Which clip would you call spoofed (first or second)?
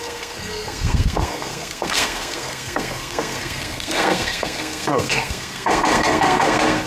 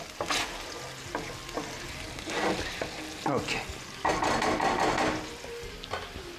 first